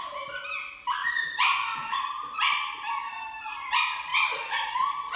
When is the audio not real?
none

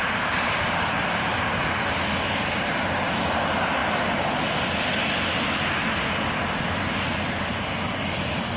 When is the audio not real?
none

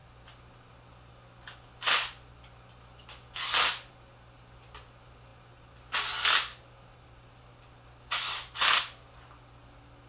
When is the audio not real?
none

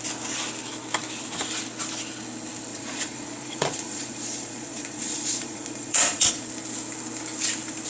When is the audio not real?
2.7-6.3 (vocoder, Vocos)

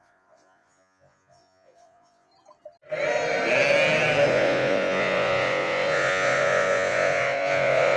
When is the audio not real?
0.0-2.3 (vocoder, Vocos); 4.3-8.0